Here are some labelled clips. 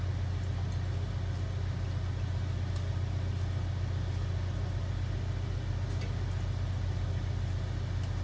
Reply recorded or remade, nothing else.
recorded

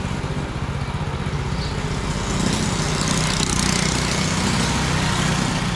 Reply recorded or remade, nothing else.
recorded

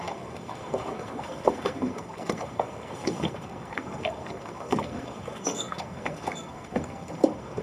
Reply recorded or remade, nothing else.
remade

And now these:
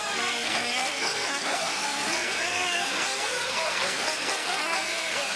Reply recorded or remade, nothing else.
remade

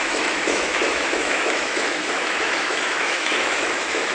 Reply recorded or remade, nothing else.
remade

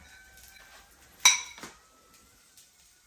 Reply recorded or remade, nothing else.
recorded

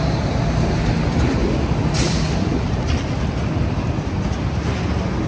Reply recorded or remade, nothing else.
recorded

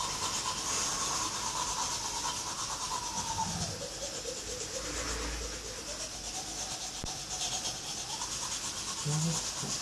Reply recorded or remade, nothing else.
recorded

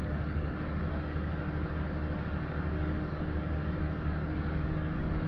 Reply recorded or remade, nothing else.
remade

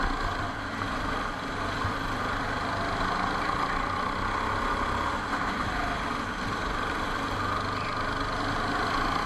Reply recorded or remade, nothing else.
recorded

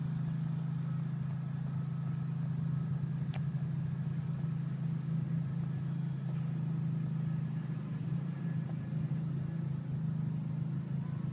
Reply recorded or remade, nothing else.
recorded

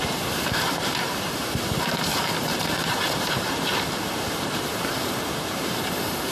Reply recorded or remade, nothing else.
remade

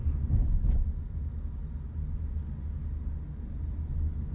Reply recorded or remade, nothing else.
recorded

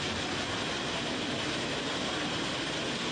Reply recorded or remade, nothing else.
recorded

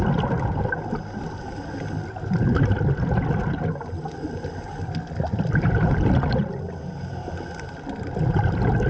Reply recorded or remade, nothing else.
recorded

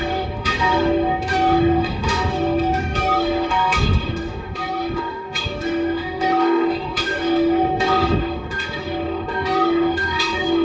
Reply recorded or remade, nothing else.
remade